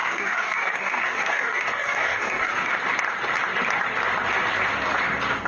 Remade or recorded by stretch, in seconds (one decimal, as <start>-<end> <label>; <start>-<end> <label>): 0.0-2.7 remade; 2.7-5.5 recorded